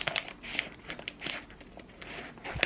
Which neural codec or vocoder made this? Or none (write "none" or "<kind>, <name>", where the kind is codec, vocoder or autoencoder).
none